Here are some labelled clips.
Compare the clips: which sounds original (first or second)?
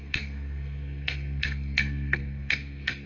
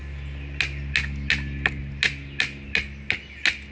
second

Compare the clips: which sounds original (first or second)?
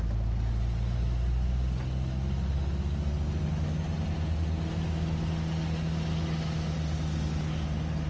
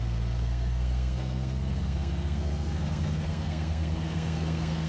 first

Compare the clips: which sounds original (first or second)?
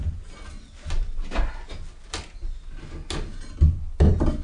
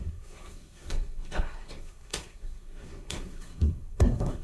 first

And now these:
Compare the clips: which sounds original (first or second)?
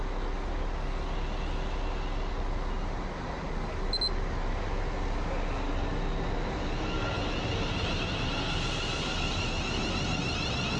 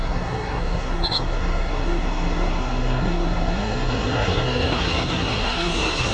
first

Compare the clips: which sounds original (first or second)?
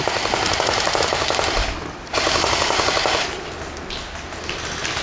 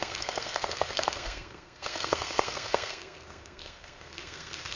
first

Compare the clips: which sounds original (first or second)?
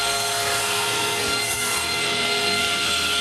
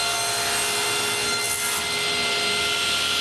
second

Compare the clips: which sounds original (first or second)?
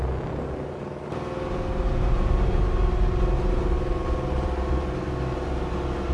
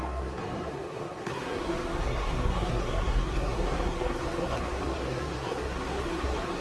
first